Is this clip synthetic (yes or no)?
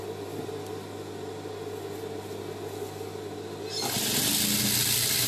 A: no